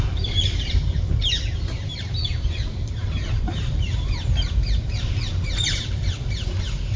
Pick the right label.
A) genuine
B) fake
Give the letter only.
A